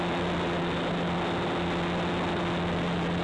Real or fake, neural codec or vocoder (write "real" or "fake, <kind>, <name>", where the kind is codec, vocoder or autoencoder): real